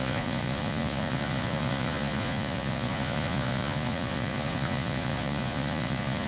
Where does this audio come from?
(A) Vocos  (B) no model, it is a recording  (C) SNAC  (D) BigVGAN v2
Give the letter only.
A